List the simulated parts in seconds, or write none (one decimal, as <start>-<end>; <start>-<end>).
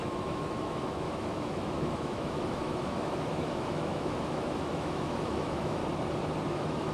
0.0-5.8; 6.5-6.9